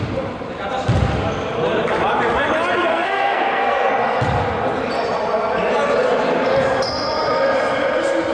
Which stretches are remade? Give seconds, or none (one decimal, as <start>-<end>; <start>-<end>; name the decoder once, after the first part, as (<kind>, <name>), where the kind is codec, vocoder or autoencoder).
2.9-3.9 (codec, SNAC)